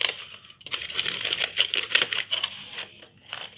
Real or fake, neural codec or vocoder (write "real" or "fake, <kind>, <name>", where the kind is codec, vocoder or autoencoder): real